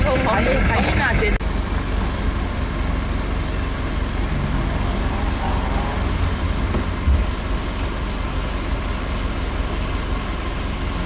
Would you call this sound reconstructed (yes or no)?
no